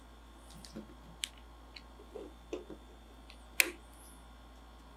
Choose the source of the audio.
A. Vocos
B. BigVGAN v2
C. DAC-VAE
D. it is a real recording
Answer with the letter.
D